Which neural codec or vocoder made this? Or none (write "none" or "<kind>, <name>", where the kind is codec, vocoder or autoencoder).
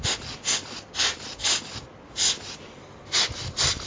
none